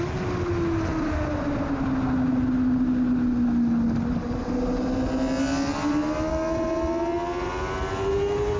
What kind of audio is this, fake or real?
real